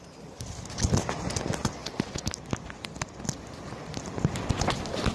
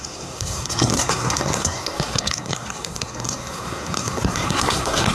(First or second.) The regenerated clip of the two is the second